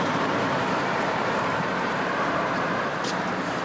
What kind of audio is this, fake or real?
fake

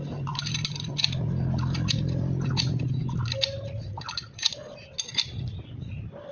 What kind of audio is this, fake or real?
real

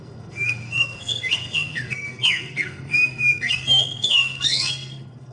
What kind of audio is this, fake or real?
fake